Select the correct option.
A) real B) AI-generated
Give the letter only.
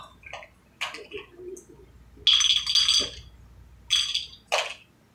A